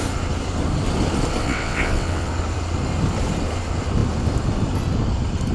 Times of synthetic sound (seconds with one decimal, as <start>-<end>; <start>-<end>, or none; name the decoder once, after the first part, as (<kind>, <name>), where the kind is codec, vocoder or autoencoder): 1.4-2.3 (vocoder, WaveNeXt)